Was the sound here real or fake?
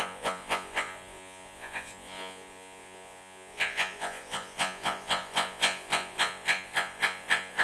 fake